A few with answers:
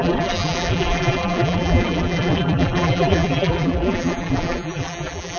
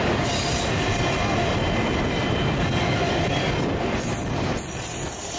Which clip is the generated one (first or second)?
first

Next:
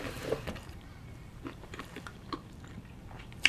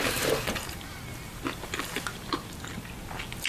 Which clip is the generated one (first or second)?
first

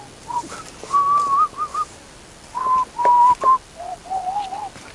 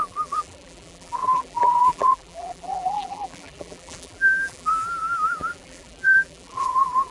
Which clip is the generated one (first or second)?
second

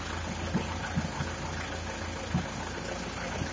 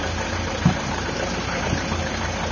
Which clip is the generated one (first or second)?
second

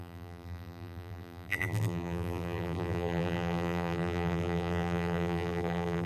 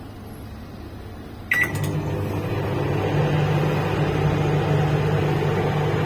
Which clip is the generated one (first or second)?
first